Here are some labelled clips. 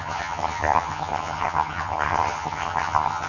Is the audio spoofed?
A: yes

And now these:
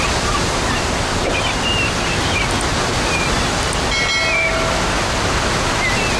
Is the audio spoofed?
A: no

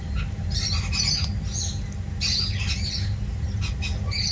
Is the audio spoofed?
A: no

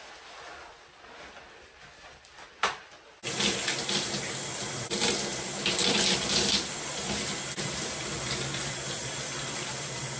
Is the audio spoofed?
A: no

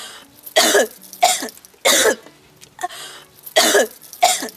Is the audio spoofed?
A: no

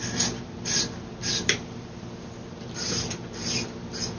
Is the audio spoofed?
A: no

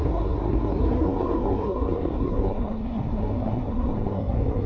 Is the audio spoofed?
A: yes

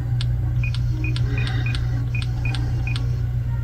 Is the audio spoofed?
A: no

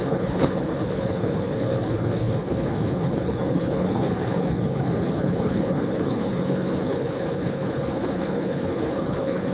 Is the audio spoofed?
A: yes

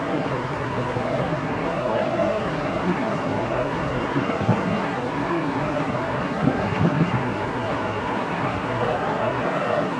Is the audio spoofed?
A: yes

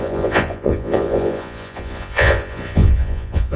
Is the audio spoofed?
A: yes